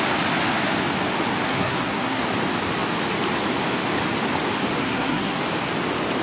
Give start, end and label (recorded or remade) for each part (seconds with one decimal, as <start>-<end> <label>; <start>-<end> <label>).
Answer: 0.0-1.4 recorded; 1.4-2.2 remade; 2.2-4.8 recorded; 4.8-5.4 remade; 5.4-6.2 recorded